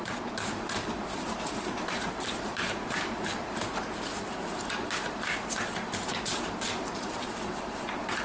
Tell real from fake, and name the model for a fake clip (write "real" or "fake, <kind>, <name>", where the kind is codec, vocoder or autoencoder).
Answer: fake, vocoder, BigVGAN v2